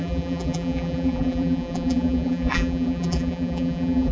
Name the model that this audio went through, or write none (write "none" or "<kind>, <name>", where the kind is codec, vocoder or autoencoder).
vocoder, BigVGAN v2